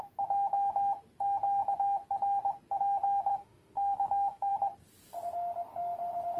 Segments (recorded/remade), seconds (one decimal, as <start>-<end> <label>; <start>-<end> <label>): 0.0-3.3 recorded; 3.3-4.5 remade; 4.5-6.4 recorded